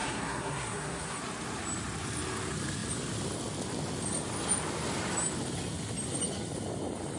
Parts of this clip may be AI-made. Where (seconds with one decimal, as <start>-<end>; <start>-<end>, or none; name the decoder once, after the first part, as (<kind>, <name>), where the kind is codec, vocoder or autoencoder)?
0.0-1.2 (codec, SNAC)